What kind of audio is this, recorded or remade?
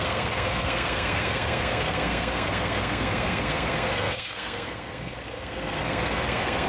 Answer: remade